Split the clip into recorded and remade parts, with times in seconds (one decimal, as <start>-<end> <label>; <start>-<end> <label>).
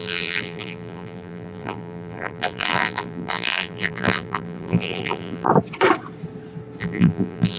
0.0-5.5 remade; 5.5-6.8 recorded; 6.8-7.6 remade